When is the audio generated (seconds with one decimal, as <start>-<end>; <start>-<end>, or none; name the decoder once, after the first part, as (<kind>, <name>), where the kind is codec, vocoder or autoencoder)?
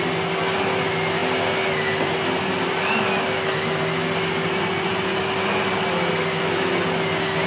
none